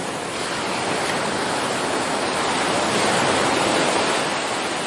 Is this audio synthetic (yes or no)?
no